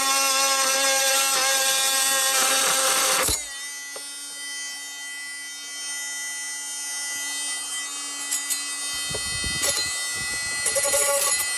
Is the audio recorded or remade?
recorded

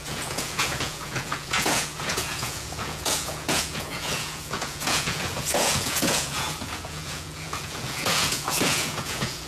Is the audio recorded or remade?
remade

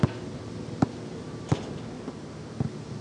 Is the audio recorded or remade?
recorded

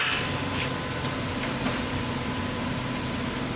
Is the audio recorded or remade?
recorded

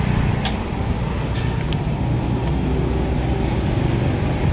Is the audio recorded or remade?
recorded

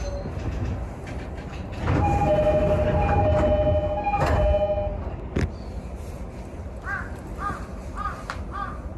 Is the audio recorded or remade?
recorded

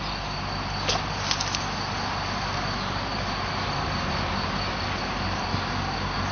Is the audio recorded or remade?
recorded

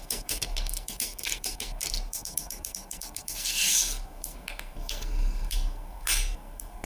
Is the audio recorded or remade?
remade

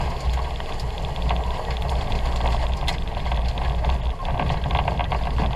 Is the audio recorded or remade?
recorded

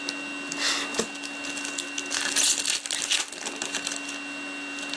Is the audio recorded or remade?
recorded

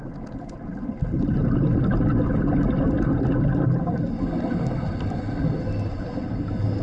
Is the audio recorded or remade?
recorded